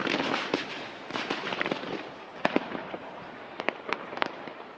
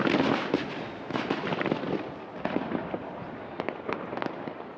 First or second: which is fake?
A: first